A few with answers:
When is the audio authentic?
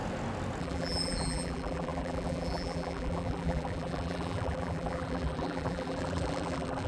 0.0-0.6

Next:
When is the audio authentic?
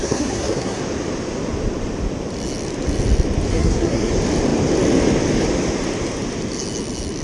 0.8-3.5; 4.1-7.2